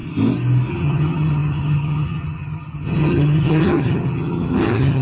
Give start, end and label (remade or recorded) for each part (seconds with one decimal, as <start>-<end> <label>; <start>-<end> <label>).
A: 0.0-0.7 recorded; 0.7-5.0 remade